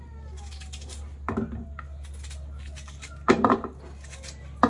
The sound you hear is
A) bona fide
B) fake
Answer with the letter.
A